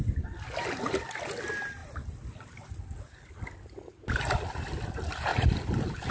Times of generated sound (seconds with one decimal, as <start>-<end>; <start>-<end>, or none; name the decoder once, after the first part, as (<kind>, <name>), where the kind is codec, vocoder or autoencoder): none